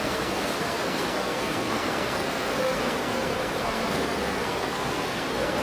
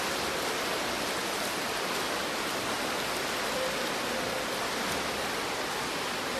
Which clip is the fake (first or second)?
first